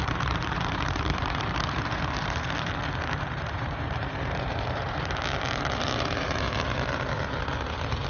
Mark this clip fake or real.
fake